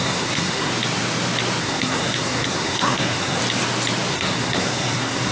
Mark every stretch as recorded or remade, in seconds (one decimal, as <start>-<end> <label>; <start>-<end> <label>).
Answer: 0.0-0.7 remade; 0.7-1.6 recorded; 1.6-3.4 remade; 3.4-4.1 recorded; 4.1-5.3 remade